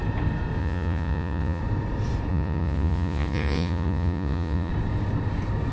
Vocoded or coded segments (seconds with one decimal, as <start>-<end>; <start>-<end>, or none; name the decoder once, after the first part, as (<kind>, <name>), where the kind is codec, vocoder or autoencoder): 0.6-1.6 (vocoder, Vocos); 2.3-4.7